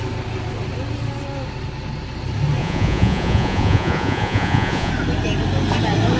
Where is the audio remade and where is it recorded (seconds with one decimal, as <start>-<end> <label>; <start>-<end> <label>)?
0.0-2.6 recorded; 2.6-4.9 remade; 4.9-6.2 recorded